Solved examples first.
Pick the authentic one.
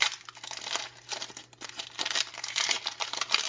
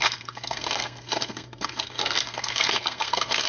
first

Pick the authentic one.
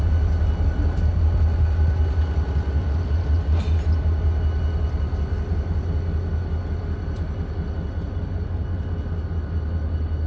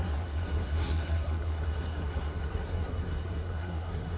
first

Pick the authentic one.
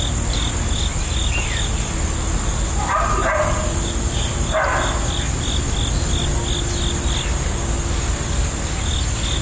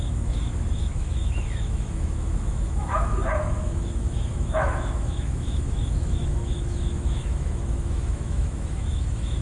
first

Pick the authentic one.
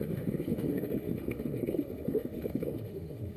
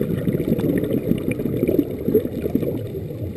second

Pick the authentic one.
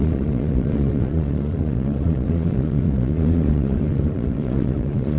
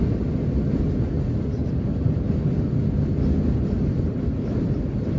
second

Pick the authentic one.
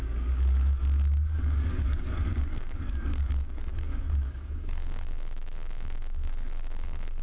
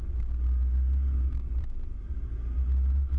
second